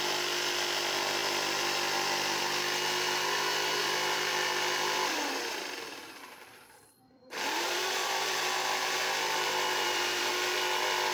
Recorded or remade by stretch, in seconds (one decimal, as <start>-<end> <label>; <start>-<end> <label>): 0.0-1.2 recorded; 1.2-2.4 remade; 2.4-3.8 recorded; 3.8-6.0 remade; 6.0-6.5 recorded; 6.5-10.3 remade; 10.3-11.1 recorded